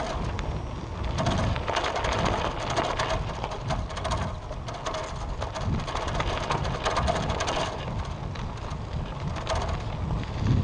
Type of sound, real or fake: real